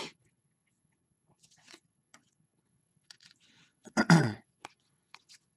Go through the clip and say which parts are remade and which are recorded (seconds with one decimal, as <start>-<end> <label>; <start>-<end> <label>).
0.0-5.6 remade